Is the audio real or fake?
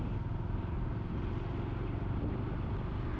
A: real